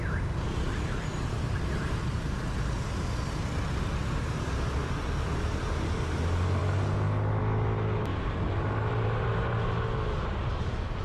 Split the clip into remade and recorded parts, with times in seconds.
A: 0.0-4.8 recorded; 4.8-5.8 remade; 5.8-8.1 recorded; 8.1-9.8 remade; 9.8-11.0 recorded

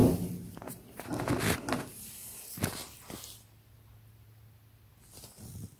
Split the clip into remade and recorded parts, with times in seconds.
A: 0.0-5.8 recorded

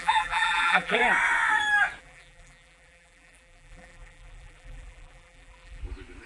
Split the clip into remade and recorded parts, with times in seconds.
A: 0.0-1.0 remade; 1.0-2.0 recorded; 2.0-5.8 remade; 5.8-6.3 recorded